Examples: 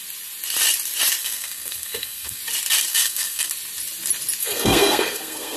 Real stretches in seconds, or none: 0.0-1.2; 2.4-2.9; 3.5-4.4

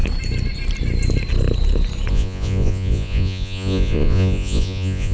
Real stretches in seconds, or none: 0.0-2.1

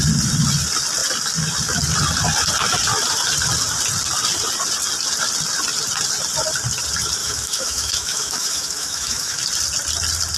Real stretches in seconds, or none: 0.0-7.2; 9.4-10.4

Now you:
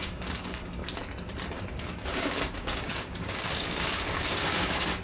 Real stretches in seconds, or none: 0.8-1.7

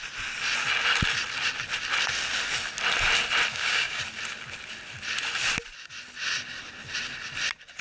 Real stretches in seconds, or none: 0.0-3.5; 4.0-7.8